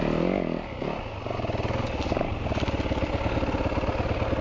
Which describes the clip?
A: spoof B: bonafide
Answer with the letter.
B